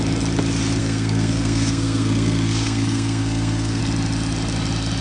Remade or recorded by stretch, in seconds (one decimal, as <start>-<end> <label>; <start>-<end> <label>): 0.0-0.8 recorded; 0.8-3.8 remade; 3.8-5.0 recorded